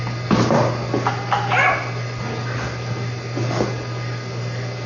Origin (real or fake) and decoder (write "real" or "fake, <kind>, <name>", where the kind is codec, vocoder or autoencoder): real